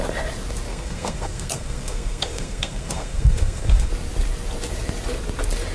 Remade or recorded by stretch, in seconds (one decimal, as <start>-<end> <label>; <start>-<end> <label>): 0.0-0.7 recorded; 0.7-3.9 remade; 3.9-5.7 recorded